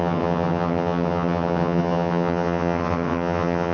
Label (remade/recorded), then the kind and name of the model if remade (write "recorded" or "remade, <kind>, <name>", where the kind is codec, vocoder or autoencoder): remade, vocoder, HiFi-GAN